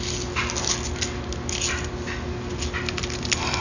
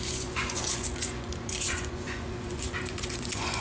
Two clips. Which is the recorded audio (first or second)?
first